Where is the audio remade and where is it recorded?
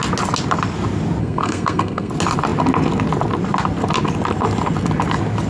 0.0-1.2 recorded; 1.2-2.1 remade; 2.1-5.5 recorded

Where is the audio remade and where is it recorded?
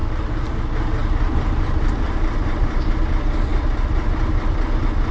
0.0-0.6 remade; 0.6-1.0 recorded; 1.0-2.9 remade; 2.9-5.1 recorded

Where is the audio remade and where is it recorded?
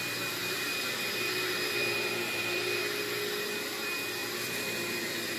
0.0-0.4 recorded; 0.4-2.8 remade; 2.8-4.2 recorded; 4.2-5.4 remade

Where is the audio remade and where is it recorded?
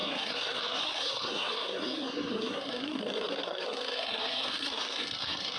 0.0-5.6 remade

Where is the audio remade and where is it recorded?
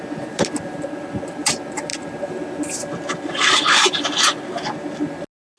0.0-5.6 recorded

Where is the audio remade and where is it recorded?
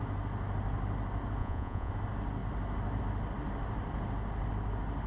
0.0-1.4 recorded; 1.4-1.9 remade; 1.9-5.1 recorded